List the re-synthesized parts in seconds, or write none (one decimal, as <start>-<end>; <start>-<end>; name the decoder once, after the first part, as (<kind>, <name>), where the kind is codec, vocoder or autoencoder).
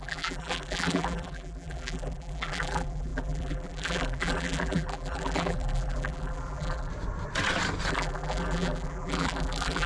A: 0.0-6.9 (vocoder, BigVGAN v2); 7.9-9.9